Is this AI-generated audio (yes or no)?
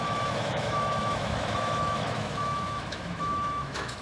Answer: yes